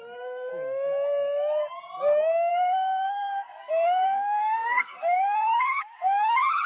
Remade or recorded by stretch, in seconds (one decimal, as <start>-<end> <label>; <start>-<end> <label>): 0.0-0.5 remade; 0.5-2.5 recorded; 2.5-6.7 remade